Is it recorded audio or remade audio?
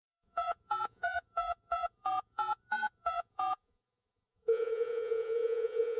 remade